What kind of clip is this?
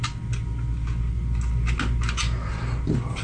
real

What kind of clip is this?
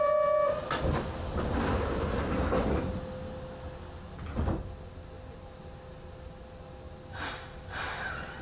real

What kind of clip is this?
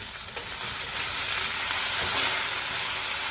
real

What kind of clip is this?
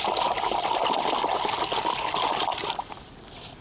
real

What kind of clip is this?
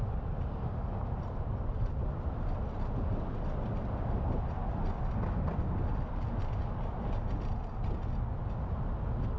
real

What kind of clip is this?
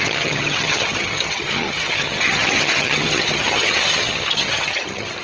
fake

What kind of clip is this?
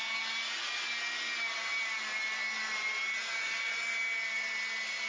real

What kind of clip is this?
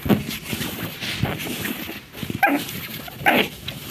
real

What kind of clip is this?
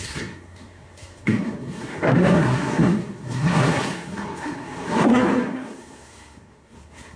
fake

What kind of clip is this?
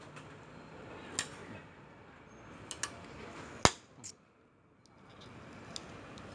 real